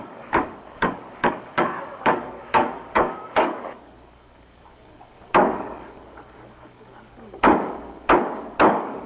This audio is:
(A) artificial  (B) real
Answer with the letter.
A